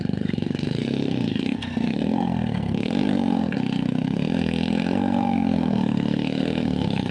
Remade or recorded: remade